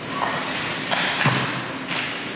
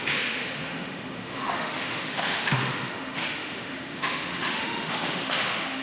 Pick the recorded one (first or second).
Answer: first